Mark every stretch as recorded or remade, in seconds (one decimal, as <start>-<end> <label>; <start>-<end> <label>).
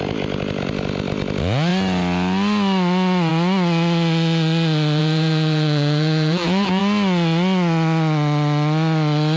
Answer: 0.0-5.0 recorded; 5.0-6.8 remade; 6.8-9.4 recorded